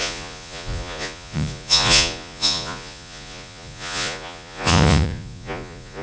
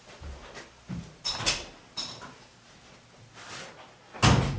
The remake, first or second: first